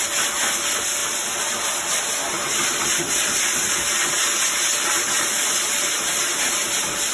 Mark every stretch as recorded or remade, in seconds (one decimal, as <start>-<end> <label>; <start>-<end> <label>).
0.0-1.0 recorded; 1.0-2.0 remade; 2.0-7.1 recorded